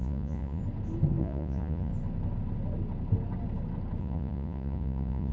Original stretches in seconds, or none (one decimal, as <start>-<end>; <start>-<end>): 0.6-1.2; 1.9-4.0